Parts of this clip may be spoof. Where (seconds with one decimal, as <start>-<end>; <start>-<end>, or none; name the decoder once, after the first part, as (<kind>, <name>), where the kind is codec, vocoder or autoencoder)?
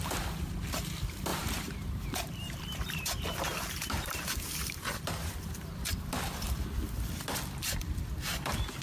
1.3-5.1 (vocoder, BigVGAN v2)